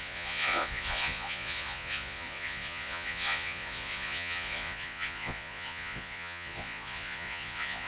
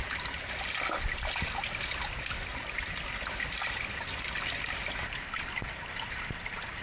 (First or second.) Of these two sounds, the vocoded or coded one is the first